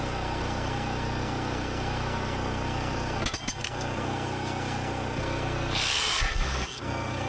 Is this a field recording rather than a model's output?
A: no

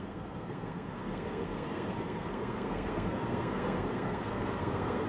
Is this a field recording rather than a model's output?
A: no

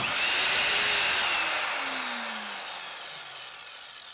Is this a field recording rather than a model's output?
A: yes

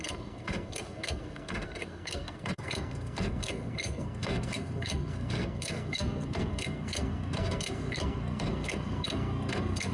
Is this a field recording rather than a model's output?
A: no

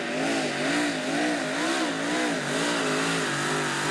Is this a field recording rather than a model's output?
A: yes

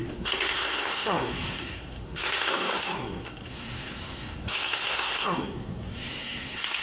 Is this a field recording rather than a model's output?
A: no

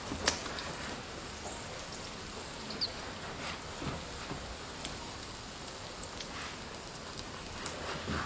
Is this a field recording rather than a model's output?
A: yes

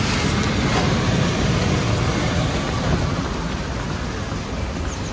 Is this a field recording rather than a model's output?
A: yes